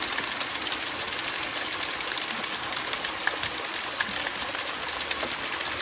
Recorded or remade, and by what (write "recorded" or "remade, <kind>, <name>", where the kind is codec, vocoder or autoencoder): recorded